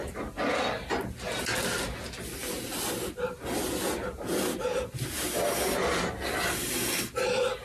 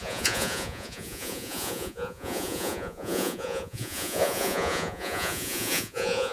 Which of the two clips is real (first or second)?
first